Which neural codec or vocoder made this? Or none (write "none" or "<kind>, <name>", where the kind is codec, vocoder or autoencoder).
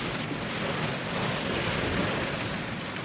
none